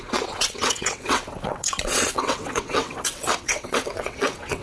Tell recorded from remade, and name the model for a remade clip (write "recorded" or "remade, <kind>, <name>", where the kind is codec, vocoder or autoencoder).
remade, vocoder, WaveNeXt